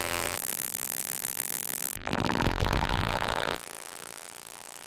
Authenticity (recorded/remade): remade